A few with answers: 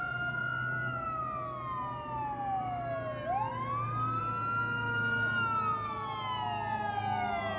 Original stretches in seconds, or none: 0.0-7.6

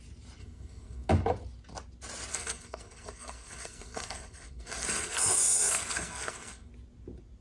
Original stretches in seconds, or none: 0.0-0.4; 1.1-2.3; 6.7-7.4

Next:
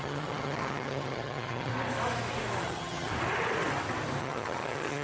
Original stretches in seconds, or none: 1.7-2.6; 3.1-4.2

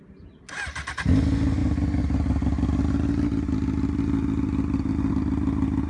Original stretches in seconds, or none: 0.0-5.9